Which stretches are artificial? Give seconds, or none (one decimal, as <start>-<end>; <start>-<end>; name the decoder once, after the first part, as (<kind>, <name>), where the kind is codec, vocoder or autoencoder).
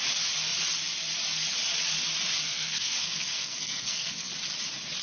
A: 2.4-4.3 (codec, SNAC)